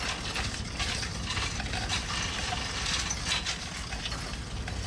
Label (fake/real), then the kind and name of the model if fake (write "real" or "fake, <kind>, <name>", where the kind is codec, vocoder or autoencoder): real